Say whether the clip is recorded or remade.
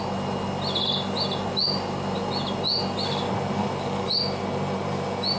recorded